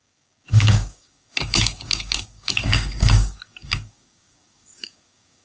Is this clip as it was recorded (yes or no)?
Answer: no